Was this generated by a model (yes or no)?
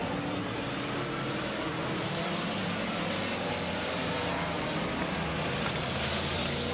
no